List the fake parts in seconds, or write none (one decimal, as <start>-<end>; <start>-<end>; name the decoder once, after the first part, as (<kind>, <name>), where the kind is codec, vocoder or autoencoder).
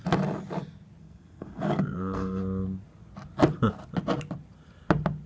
1.0-2.4 (codec, SNAC)